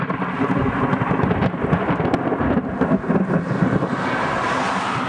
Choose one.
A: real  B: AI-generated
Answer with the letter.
A